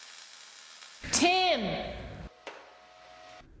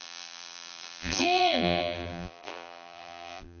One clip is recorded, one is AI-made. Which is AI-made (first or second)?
second